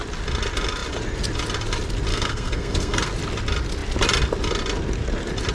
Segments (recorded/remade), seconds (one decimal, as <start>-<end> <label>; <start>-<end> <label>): 0.0-2.1 recorded; 2.1-3.1 remade; 3.1-5.5 recorded